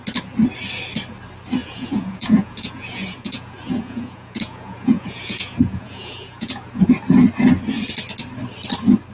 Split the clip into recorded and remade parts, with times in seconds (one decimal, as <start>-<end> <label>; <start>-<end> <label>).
0.0-1.6 recorded; 1.6-6.9 remade; 6.9-9.1 recorded